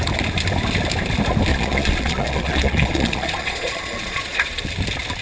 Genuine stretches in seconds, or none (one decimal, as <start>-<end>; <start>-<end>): 0.0-1.5; 4.6-5.2